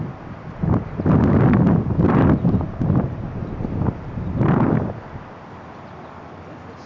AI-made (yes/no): no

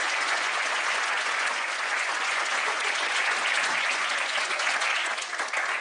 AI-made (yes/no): yes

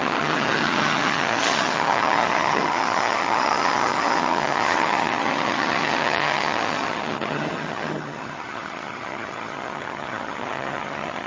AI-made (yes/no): yes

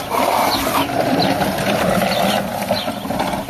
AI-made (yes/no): no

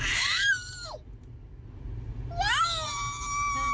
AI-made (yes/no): no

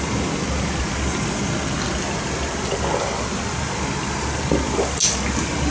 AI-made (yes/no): no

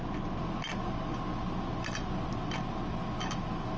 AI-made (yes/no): no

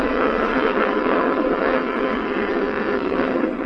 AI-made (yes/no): yes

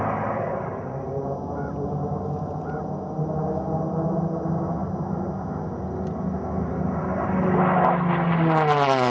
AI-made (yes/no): no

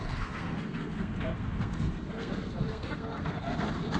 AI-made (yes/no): yes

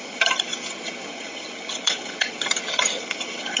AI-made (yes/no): yes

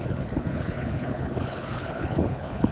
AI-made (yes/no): yes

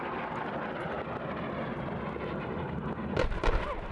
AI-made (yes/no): no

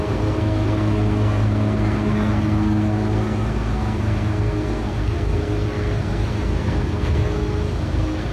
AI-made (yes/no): yes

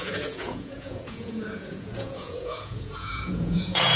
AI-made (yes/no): yes